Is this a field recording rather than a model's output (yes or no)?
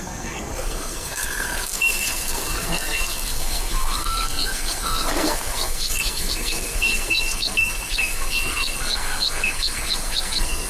no